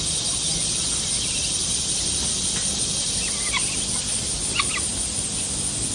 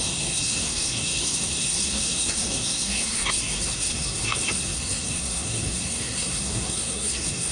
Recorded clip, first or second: first